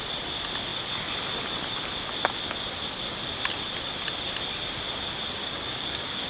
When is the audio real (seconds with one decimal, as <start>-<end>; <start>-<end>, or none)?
0.0-5.4